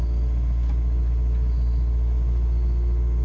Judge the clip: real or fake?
real